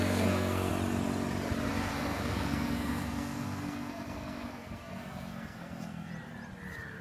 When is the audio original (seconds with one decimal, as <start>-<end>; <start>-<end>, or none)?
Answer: 0.7-1.7; 6.1-7.0